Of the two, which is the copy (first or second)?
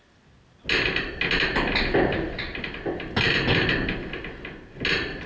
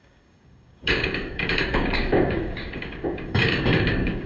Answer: second